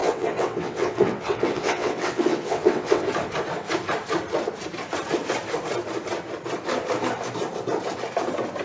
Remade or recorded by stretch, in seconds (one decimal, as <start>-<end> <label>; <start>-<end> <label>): 0.0-3.1 remade; 3.1-8.6 recorded